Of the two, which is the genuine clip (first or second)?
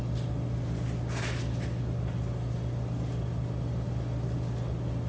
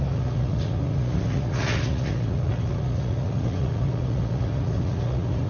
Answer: first